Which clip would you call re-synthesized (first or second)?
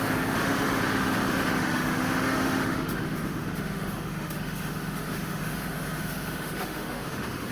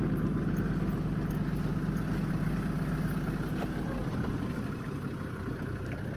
first